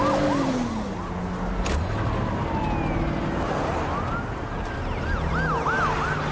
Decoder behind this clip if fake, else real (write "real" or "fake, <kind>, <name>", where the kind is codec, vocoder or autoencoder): real